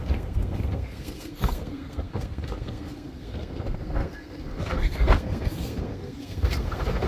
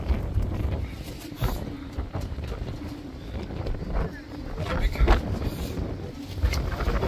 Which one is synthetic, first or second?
first